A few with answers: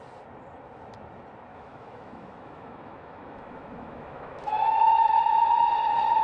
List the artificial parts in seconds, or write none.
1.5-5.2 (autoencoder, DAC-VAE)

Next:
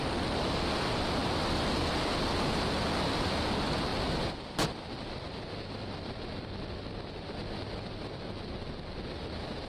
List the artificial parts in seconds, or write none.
none

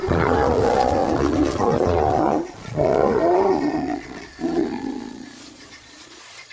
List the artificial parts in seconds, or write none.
0.0-6.5 (vocoder, Vocos)

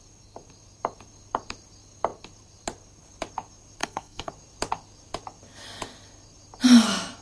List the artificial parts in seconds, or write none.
3.8-4.3 (codec, SNAC)

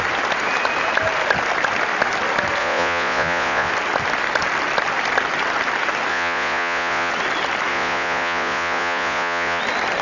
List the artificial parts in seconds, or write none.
2.6-3.7 (vocoder, Vocos); 6.1-7.1; 7.7-9.6